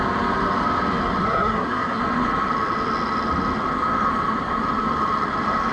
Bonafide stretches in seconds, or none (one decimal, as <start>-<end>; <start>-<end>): 0.0-1.2; 2.0-5.7